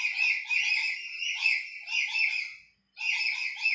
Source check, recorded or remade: recorded